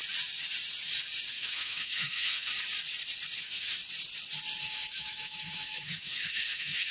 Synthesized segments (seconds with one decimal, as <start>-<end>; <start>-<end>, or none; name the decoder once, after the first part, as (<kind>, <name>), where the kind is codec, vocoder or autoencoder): 1.3-2.5 (autoencoder, DAC-VAE); 3.4-3.8; 4.6-6.9

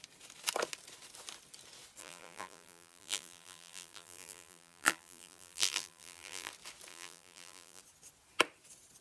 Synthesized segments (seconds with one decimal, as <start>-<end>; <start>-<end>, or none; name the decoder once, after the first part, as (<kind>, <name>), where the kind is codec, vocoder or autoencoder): 2.0-6.5 (vocoder, BigVGAN v2); 6.9-7.8

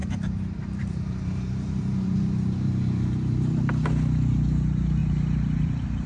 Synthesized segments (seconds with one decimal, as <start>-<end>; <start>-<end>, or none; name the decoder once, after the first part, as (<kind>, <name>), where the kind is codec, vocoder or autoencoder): 0.0-3.7 (vocoder, BigVGAN v2); 5.0-6.1

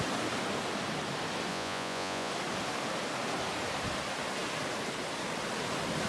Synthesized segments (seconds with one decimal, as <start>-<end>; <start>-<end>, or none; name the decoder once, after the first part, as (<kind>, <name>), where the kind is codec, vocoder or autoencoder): 1.5-2.3 (vocoder, Vocos)

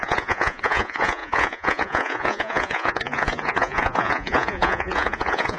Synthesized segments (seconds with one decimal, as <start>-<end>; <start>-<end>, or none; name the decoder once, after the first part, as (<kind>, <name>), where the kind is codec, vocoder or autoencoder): 0.0-5.6 (vocoder, Vocos)

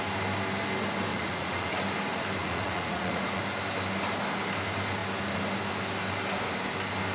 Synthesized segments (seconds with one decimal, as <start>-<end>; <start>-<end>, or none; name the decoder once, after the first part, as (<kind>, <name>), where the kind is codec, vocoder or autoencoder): 1.1-1.7 (vocoder, Vocos); 2.4-3.4

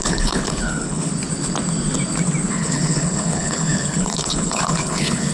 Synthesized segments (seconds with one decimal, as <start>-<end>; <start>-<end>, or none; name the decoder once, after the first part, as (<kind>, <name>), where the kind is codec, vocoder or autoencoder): 0.0-1.1 (codec, HILCodec); 2.5-5.3